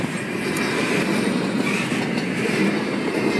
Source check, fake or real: real